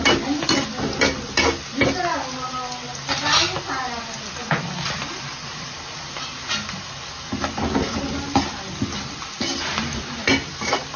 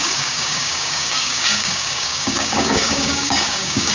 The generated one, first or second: second